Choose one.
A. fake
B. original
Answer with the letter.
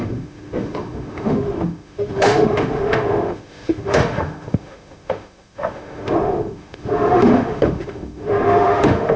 A